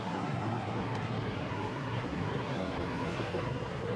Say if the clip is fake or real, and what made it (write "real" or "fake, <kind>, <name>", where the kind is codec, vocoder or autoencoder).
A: fake, codec, SNAC